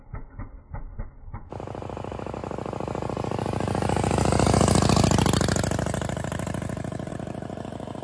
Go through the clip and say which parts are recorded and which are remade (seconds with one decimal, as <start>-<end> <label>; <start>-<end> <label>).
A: 0.0-8.0 recorded

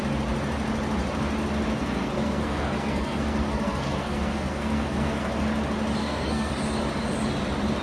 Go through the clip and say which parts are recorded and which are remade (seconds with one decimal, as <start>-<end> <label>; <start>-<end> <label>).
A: 0.0-1.8 recorded; 1.8-5.3 remade; 5.3-6.0 recorded; 6.0-6.5 remade; 6.5-7.8 recorded